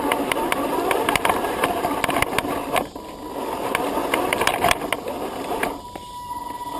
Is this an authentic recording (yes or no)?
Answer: yes